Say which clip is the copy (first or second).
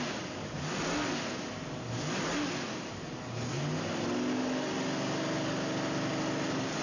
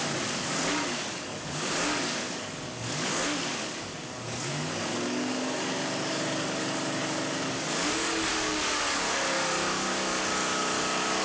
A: second